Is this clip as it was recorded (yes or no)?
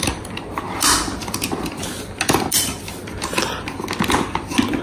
yes